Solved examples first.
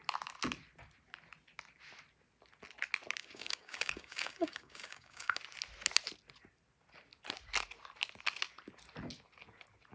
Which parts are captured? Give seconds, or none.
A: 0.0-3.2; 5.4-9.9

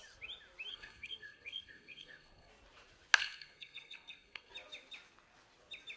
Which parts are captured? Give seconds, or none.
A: 0.0-0.7; 2.5-3.2; 4.5-6.0

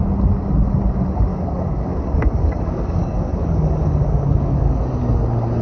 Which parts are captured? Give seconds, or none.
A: 0.0-1.3; 4.7-5.6

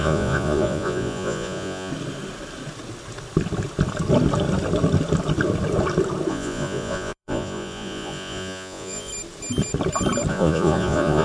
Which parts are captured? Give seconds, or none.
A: 1.9-6.3; 9.1-10.3

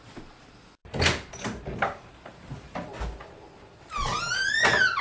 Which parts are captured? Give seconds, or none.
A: 0.8-2.1; 2.9-5.0

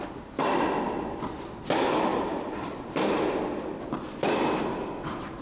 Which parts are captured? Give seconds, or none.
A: 0.0-5.4

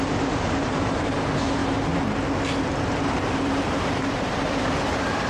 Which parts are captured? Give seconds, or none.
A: 1.6-2.6